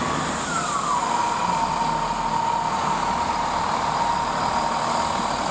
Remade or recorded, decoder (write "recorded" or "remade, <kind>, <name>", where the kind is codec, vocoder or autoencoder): recorded